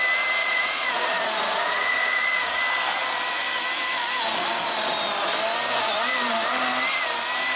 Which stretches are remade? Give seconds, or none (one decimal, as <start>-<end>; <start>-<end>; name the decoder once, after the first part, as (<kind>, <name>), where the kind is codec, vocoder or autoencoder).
0.4-2.6 (vocoder, Vocos)